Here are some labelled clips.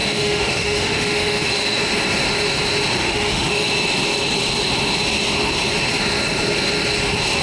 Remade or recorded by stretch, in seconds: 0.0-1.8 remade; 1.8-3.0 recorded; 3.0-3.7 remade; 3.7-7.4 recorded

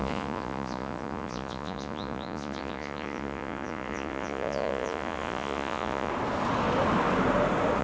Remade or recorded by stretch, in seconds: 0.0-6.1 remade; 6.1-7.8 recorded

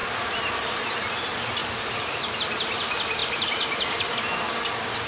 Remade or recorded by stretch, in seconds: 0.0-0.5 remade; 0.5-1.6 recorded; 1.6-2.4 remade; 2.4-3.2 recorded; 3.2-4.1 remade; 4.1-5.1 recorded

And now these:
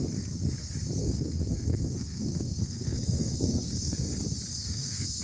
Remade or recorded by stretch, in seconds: 0.0-1.0 recorded; 1.0-4.1 remade; 4.1-4.5 recorded; 4.5-5.2 remade

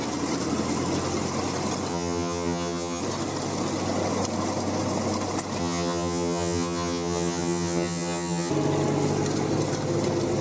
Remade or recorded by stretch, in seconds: 0.0-1.9 recorded; 1.9-3.0 remade; 3.0-5.6 recorded; 5.6-8.5 remade; 8.5-10.4 recorded

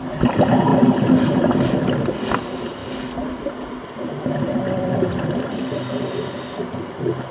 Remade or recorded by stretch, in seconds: 0.0-7.3 recorded